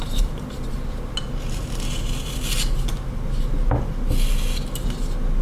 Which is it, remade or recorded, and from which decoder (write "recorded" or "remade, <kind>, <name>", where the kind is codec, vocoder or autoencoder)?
recorded